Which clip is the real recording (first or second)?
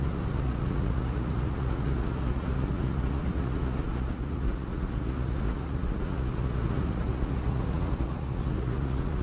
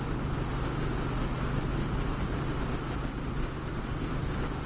second